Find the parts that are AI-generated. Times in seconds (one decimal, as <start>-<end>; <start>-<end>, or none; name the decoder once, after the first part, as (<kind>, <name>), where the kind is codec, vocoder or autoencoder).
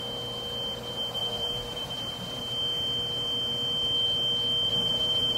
1.2-2.4 (vocoder, BigVGAN v2); 4.7-5.4